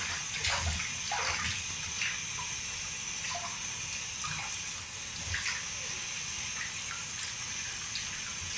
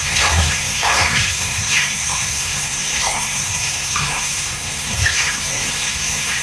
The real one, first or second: first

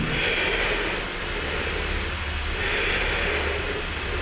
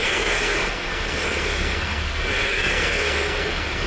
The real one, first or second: first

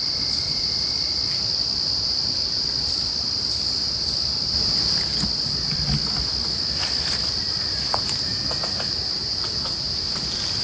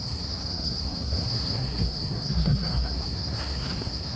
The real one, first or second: first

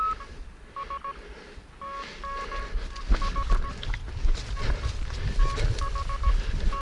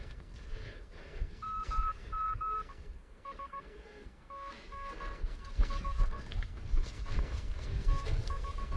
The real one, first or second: first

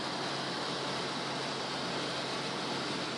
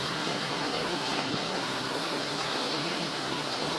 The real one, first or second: first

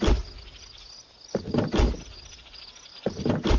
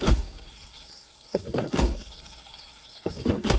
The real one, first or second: first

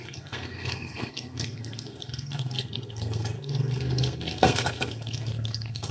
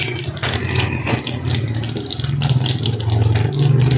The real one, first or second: second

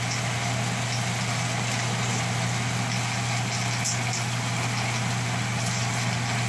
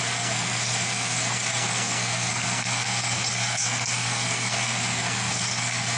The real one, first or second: first